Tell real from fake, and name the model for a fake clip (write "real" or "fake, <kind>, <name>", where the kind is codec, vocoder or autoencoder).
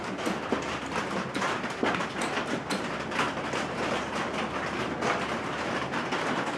real